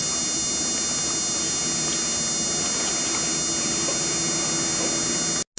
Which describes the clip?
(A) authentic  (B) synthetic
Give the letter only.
A